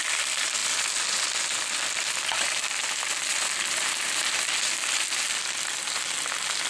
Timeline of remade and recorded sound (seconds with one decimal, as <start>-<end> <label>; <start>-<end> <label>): 0.0-3.3 recorded; 3.3-5.4 remade; 5.4-6.7 recorded